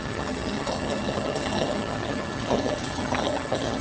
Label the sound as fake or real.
fake